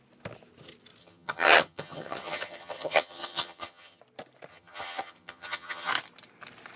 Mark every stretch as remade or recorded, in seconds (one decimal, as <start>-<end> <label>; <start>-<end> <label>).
0.0-1.0 recorded; 1.0-4.0 remade; 4.0-4.5 recorded; 4.5-5.9 remade; 5.9-6.8 recorded